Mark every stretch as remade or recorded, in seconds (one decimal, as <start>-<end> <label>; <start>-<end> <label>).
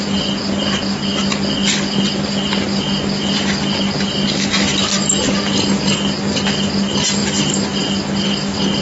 0.0-8.8 recorded